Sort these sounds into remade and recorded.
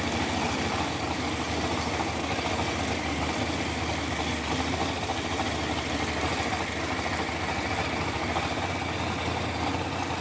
recorded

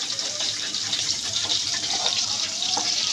remade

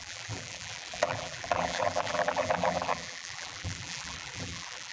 remade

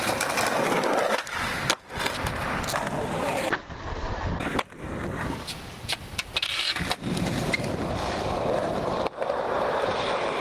recorded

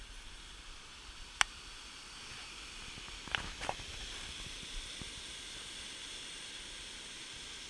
recorded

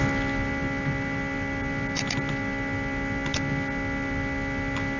recorded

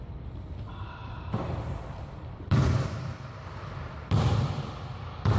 remade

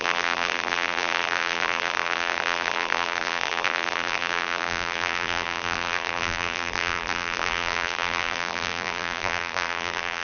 remade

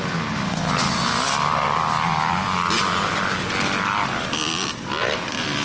recorded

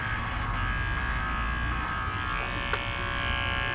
recorded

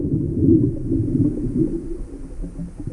recorded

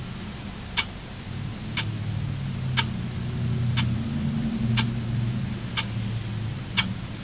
recorded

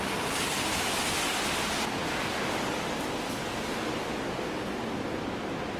recorded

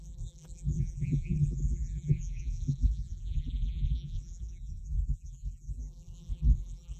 remade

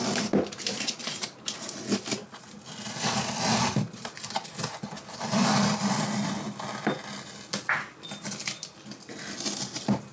recorded